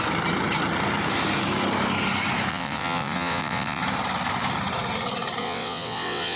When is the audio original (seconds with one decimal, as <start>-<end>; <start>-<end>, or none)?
0.0-2.5; 3.8-5.4